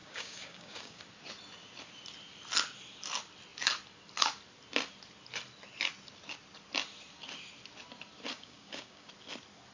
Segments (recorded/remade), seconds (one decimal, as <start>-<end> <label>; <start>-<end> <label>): 0.0-1.0 remade; 1.0-8.3 recorded; 8.3-9.1 remade; 9.1-9.7 recorded